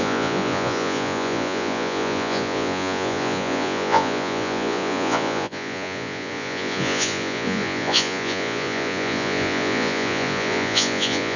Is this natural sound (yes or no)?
no